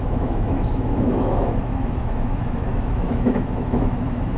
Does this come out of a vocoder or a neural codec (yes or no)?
yes